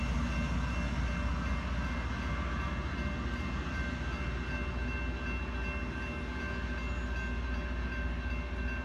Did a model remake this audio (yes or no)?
no